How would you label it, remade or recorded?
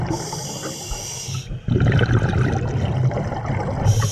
recorded